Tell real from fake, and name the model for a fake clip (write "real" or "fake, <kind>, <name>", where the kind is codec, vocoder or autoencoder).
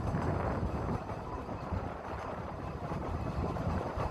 fake, vocoder, BigVGAN v2